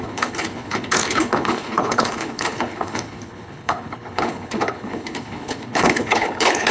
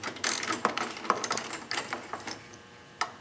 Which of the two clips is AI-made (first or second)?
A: first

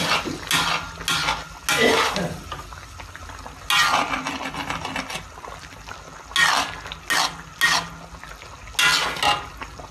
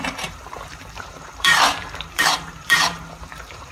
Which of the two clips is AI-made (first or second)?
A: second